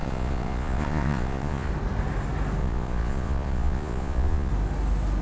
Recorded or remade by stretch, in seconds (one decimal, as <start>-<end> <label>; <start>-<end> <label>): 0.0-1.7 remade; 1.7-2.6 recorded; 2.6-4.5 remade; 4.5-5.2 recorded